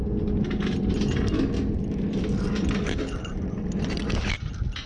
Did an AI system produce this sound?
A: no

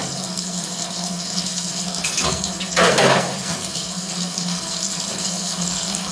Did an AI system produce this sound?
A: yes